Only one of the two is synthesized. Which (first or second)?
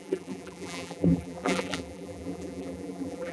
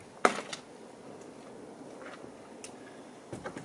first